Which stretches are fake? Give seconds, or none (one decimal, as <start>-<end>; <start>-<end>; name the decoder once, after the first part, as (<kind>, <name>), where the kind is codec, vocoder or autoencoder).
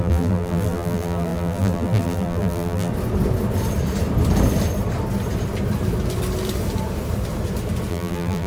0.0-2.9 (vocoder, BigVGAN v2); 7.9-8.5